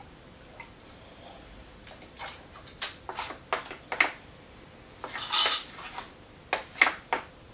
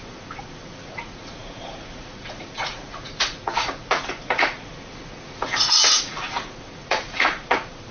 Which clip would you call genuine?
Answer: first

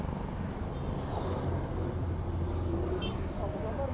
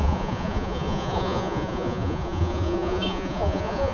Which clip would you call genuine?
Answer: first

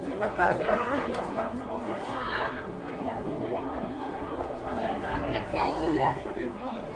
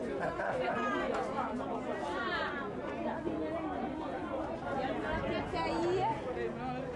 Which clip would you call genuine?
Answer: second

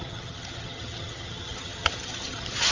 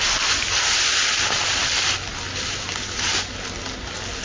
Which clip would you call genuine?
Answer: second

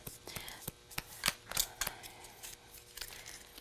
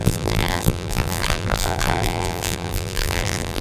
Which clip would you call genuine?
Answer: first